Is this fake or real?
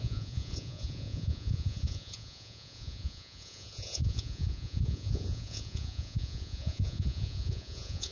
fake